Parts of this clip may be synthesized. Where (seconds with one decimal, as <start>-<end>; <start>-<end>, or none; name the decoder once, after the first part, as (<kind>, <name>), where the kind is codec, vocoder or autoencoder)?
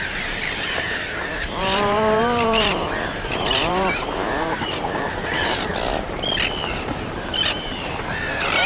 0.0-5.7 (vocoder, BigVGAN v2); 6.7-8.7